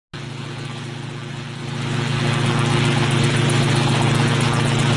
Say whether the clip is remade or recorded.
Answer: recorded